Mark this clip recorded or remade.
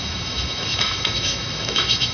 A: remade